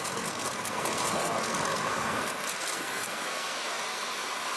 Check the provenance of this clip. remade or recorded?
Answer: remade